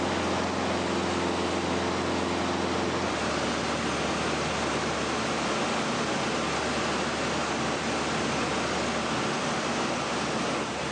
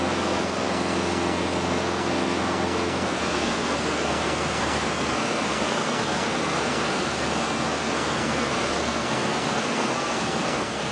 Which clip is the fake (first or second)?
second